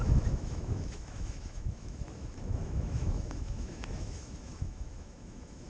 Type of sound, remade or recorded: remade